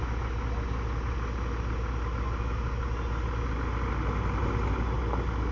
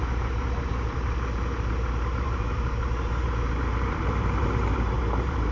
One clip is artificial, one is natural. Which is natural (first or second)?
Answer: first